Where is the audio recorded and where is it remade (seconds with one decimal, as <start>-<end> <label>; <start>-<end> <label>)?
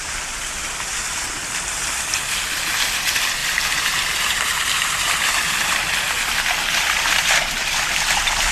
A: 0.0-3.4 recorded; 3.4-5.7 remade; 5.7-8.5 recorded